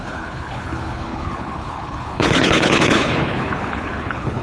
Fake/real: fake